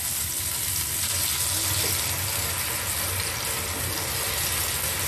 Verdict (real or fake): real